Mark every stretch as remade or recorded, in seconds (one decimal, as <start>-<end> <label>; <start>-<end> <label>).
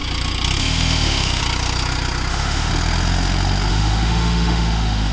0.0-0.6 recorded; 0.6-1.4 remade; 1.4-2.3 recorded; 2.3-2.7 remade; 2.7-3.7 recorded; 3.7-5.1 remade